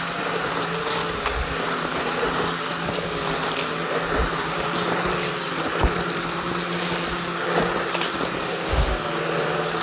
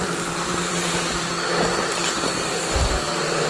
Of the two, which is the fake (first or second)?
second